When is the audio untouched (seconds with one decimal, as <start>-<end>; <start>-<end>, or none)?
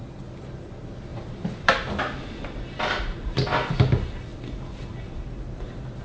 0.0-1.1; 1.7-6.0